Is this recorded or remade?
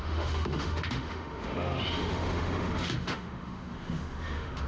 remade